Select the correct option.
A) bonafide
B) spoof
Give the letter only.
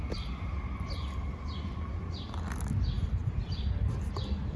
A